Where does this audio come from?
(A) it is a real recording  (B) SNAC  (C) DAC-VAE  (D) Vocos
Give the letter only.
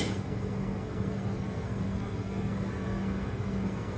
B